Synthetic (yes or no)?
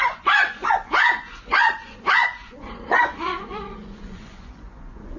yes